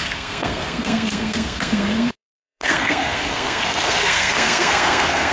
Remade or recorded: remade